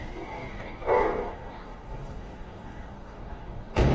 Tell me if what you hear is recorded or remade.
remade